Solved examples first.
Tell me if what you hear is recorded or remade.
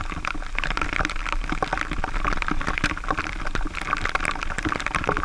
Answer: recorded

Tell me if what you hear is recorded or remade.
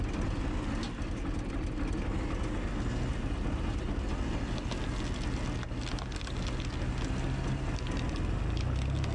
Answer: recorded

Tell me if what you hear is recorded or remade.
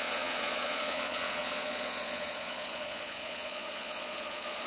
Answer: remade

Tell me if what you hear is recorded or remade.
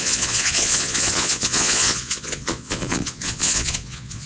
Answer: remade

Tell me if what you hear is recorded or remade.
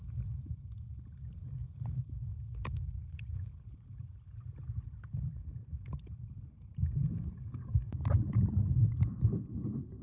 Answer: recorded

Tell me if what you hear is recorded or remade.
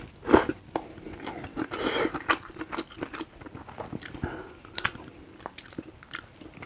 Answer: recorded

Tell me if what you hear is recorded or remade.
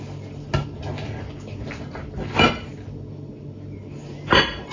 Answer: recorded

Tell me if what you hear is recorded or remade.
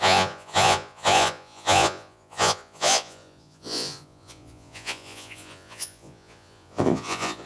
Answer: remade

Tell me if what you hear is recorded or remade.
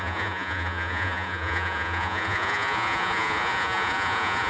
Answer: remade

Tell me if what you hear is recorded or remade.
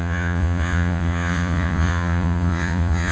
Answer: remade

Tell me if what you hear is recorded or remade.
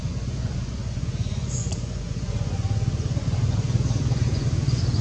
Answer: remade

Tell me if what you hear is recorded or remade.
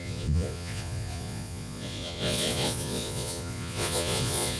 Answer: remade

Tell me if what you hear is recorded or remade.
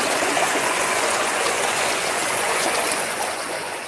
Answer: remade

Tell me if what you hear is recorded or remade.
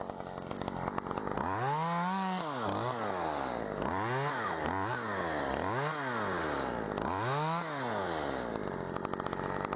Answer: recorded